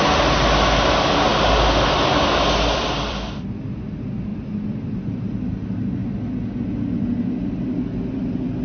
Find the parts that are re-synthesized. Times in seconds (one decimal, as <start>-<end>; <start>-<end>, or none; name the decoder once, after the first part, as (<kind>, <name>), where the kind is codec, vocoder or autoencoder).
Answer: 1.3-3.3 (vocoder, BigVGAN v2); 4.3-5.2